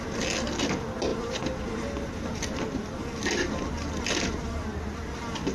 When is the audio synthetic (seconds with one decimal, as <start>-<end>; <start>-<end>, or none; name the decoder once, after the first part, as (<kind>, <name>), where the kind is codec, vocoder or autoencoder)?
none